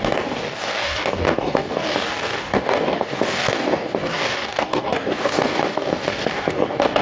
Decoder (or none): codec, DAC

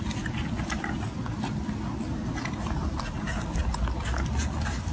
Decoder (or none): none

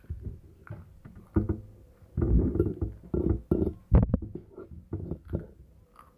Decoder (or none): none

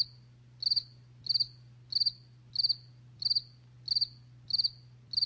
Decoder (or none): none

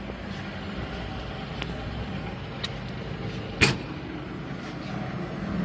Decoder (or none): none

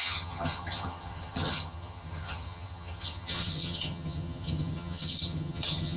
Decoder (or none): vocoder, HiFi-GAN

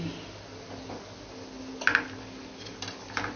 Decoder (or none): none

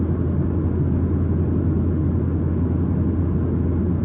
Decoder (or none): none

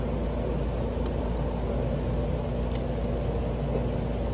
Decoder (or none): none